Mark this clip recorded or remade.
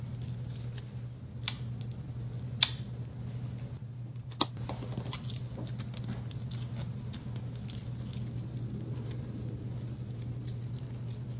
recorded